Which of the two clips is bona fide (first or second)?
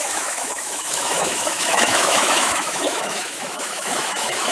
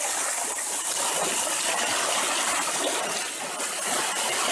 second